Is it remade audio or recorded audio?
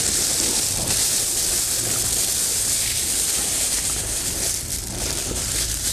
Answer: remade